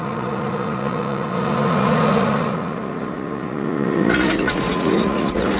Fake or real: fake